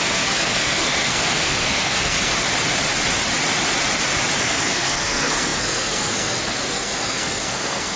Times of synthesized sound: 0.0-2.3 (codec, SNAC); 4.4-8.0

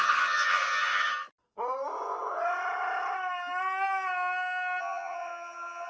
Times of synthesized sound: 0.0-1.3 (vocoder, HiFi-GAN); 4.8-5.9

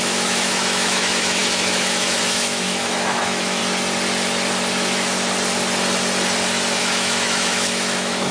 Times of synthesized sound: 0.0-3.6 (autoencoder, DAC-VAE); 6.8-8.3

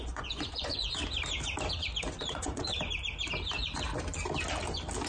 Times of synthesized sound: 0.0-1.0 (vocoder, Vocos); 2.2-2.7